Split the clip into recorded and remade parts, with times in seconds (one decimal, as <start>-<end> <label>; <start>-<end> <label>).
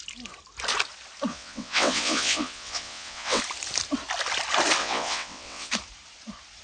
0.0-1.3 recorded; 1.3-3.4 remade; 3.4-4.8 recorded; 4.8-5.7 remade; 5.7-6.6 recorded